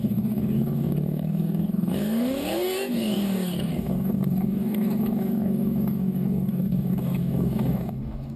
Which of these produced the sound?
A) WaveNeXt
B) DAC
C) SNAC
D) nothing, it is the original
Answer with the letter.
B